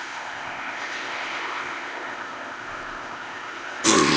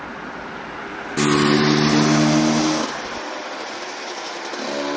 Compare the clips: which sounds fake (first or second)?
first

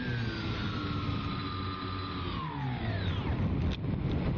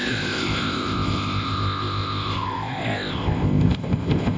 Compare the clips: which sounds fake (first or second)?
second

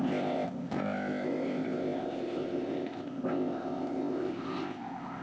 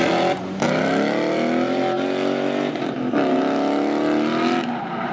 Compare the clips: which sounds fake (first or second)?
first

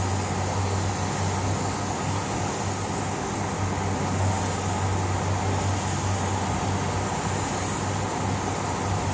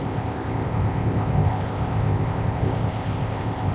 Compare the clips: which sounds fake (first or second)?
second